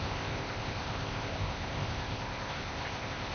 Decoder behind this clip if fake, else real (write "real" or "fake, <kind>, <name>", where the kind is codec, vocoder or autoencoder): fake, codec, ZipCodec